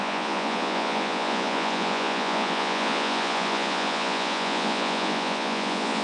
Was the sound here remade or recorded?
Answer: remade